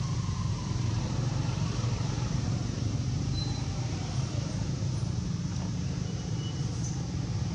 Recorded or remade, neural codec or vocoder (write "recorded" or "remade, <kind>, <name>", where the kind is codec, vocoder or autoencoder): remade, vocoder, BigVGAN v2